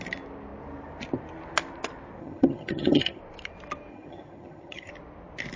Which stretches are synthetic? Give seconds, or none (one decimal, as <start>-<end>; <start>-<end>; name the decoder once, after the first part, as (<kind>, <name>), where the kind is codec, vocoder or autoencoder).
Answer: 2.2-3.2 (vocoder, HiFi-GAN); 3.9-4.9